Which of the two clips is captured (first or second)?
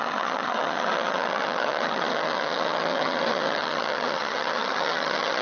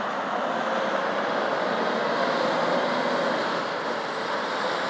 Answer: second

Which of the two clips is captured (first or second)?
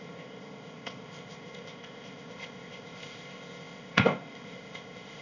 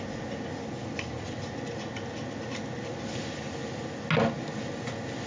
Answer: second